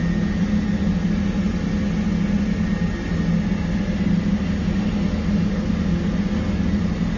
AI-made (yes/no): no